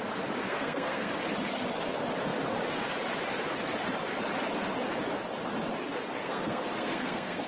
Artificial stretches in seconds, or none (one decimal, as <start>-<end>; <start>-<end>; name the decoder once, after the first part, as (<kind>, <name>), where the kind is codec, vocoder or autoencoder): 0.4-1.1 (codec, SNAC); 6.2-7.5